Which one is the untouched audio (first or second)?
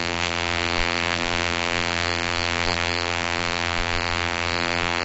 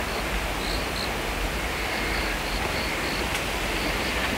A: second